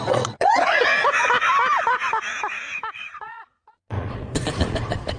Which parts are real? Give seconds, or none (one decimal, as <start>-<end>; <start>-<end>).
0.9-3.0